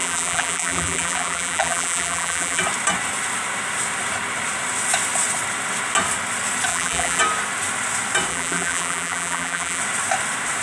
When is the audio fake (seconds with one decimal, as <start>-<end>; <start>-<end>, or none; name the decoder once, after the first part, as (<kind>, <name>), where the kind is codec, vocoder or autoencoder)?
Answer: 0.0-2.6 (vocoder, BigVGAN v2); 6.7-7.2; 8.3-9.8

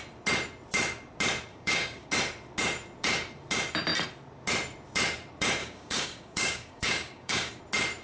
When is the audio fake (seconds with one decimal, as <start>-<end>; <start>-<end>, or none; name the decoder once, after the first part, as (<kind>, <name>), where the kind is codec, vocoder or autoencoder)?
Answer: 1.5-2.1 (codec, DAC); 5.6-7.6